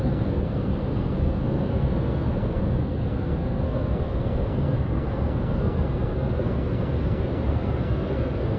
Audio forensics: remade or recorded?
remade